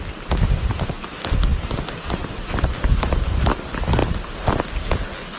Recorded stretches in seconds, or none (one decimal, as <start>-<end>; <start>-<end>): 0.0-5.4